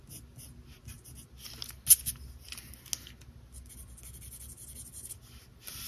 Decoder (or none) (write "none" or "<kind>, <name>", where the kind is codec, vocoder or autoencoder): none